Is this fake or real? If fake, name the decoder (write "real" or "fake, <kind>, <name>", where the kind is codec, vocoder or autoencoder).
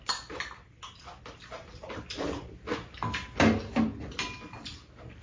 real